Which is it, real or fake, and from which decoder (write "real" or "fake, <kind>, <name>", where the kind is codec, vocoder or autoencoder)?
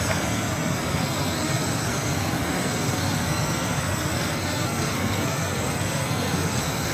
fake, codec, SNAC